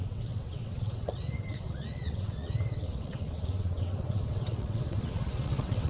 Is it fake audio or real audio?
fake